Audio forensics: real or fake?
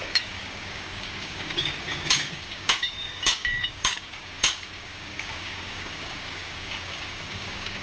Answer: fake